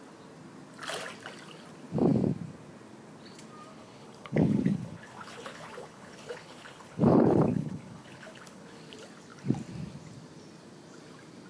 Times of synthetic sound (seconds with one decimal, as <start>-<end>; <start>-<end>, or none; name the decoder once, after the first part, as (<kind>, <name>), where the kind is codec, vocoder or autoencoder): 3.7-8.8 (codec, HILCodec)